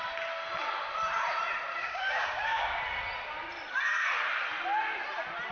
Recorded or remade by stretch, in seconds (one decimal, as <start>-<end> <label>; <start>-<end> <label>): 0.0-1.8 recorded; 1.8-2.8 remade; 2.8-5.5 recorded